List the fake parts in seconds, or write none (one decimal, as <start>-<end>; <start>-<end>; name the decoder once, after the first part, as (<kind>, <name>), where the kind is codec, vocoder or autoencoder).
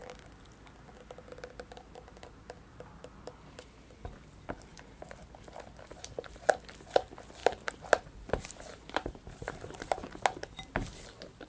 4.7-5.3 (vocoder, BigVGAN v2); 5.9-6.5; 7.4-10.2